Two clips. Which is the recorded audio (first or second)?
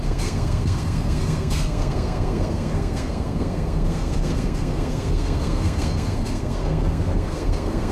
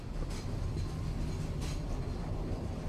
second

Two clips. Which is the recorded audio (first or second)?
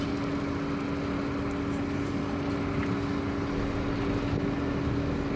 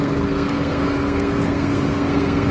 first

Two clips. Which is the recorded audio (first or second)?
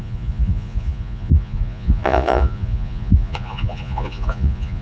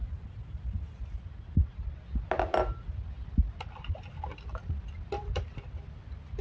second